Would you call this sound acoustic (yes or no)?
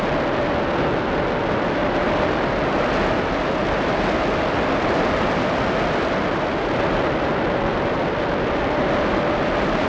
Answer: yes